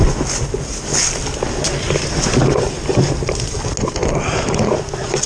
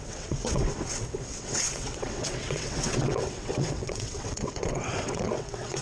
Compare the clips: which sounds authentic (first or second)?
first